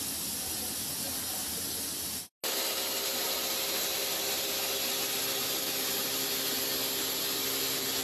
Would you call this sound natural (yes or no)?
yes